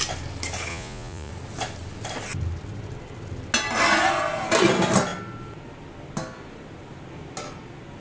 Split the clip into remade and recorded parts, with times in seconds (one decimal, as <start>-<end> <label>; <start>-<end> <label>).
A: 0.0-0.7 recorded; 0.7-1.3 remade; 1.3-8.0 recorded